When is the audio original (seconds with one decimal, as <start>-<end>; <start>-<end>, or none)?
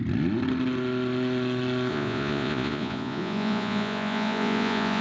0.0-1.9